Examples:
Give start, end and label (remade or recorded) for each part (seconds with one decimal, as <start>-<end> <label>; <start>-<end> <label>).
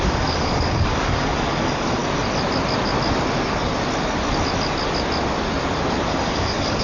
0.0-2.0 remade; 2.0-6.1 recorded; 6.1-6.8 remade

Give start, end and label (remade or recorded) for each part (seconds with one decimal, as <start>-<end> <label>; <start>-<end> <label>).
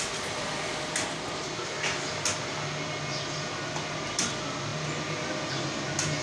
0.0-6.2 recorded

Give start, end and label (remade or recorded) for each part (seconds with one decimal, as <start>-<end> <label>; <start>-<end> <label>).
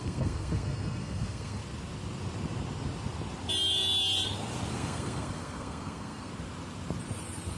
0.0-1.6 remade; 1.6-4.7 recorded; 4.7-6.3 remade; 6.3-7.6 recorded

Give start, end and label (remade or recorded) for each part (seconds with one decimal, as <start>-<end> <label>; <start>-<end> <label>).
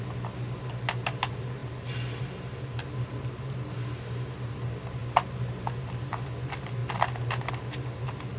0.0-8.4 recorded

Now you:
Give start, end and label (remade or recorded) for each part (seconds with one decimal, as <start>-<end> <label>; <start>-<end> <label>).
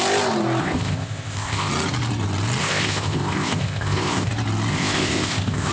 0.0-0.6 recorded; 0.6-1.7 remade; 1.7-2.6 recorded; 2.6-4.3 remade; 4.3-4.7 recorded; 4.7-5.7 remade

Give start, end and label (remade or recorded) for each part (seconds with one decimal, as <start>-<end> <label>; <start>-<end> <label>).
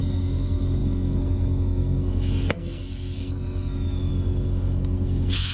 0.0-5.5 remade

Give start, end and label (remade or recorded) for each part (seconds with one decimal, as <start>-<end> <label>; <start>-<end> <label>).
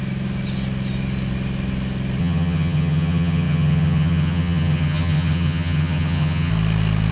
0.0-2.2 recorded; 2.2-6.5 remade; 6.5-7.1 recorded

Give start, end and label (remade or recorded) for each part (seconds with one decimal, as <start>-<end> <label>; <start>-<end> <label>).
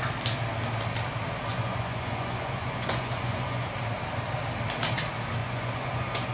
0.0-1.5 recorded; 1.5-3.7 remade; 3.7-5.4 recorded; 5.4-6.3 remade